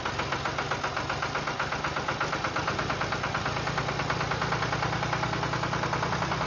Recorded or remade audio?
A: recorded